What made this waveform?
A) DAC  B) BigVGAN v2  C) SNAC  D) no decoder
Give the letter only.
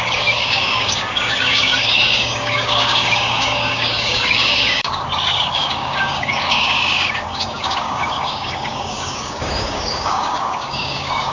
A